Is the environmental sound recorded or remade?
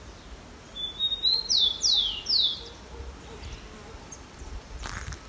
recorded